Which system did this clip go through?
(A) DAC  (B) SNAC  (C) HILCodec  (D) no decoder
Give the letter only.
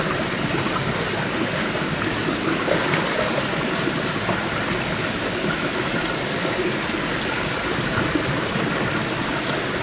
D